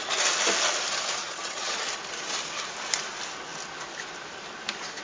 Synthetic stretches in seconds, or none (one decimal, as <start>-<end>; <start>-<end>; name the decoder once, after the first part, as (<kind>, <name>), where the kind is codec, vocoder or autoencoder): 1.2-1.7 (vocoder, HiFi-GAN)